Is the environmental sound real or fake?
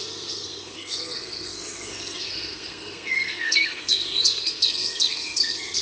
fake